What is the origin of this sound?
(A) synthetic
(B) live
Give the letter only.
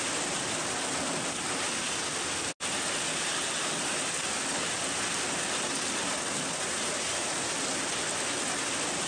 B